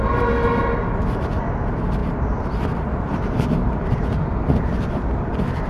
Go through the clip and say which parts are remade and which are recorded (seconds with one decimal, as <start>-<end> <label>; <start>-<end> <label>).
0.0-2.0 recorded; 2.0-5.7 remade